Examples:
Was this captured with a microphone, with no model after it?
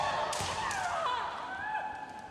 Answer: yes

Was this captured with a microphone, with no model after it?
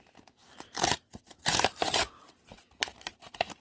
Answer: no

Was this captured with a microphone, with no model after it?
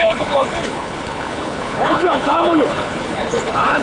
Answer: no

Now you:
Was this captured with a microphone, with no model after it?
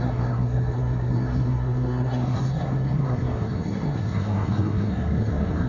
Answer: no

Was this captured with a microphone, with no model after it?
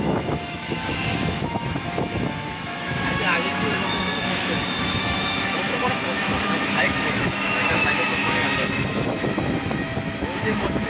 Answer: no